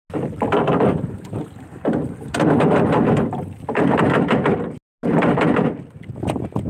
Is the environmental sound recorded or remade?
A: recorded